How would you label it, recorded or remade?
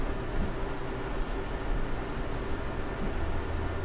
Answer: recorded